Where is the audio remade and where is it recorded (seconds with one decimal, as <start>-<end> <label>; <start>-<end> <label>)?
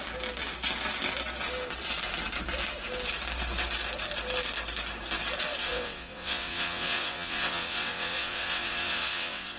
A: 0.0-5.6 recorded; 5.6-9.6 remade